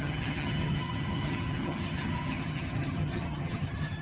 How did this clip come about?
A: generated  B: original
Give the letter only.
A